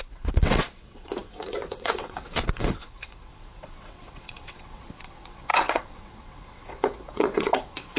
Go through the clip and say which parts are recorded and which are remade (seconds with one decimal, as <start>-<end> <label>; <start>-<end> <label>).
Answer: 0.0-8.0 remade